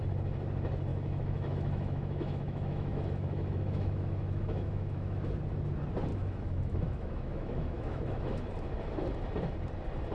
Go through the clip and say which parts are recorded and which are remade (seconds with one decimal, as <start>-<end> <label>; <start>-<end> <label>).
0.0-0.9 recorded; 0.9-5.3 remade; 5.3-6.1 recorded; 6.1-8.5 remade; 8.5-10.1 recorded